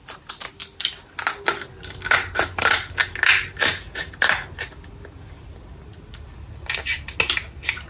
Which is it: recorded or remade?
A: recorded